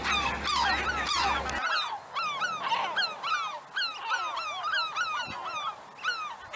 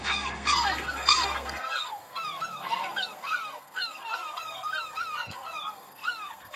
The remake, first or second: second